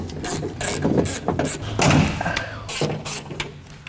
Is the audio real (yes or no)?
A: yes